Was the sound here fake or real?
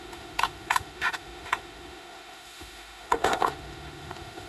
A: fake